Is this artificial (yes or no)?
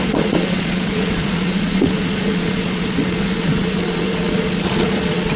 yes